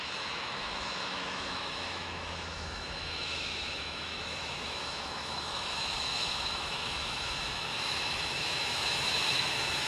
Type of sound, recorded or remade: remade